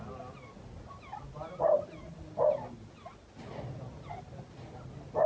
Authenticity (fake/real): real